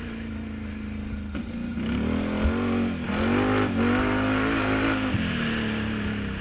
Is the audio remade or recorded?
recorded